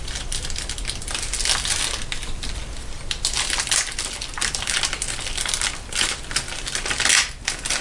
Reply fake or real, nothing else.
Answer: real